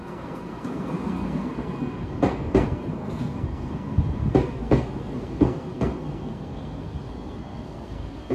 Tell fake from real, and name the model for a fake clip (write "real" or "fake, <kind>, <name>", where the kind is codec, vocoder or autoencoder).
fake, codec, SNAC